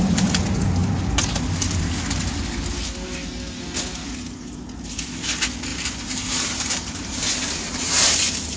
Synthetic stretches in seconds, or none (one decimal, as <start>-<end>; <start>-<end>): 5.7-8.6